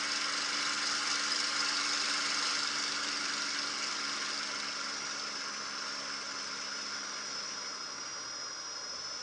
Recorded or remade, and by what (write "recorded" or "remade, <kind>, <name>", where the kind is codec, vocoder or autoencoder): recorded